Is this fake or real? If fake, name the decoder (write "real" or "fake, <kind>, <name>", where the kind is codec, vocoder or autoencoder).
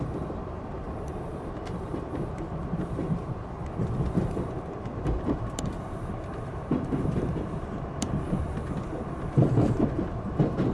fake, vocoder, BigVGAN v2